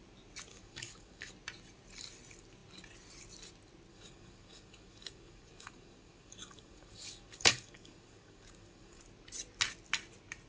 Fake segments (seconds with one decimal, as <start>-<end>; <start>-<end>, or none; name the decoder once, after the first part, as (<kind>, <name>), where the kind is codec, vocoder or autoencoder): 0.5-1.3 (codec, DAC); 3.9-9.0